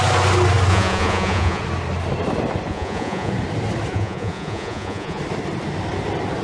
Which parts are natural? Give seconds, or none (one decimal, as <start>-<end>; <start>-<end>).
0.0-0.7; 1.6-2.7; 3.3-3.9; 5.2-6.4